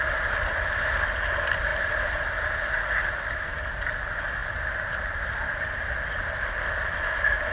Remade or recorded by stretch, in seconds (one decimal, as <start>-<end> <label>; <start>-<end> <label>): 0.0-7.5 recorded